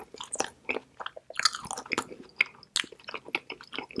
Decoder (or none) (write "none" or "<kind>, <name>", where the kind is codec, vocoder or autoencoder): none